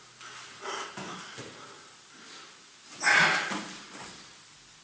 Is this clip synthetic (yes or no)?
no